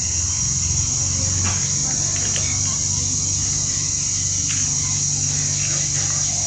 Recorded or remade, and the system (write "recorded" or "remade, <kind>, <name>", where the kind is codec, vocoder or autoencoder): recorded